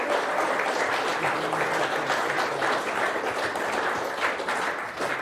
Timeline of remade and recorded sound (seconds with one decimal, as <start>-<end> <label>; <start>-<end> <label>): 0.0-5.2 recorded